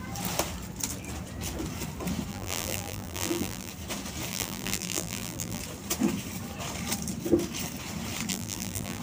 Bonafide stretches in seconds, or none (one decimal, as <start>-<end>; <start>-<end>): 0.0-2.3; 3.7-4.3; 5.6-8.3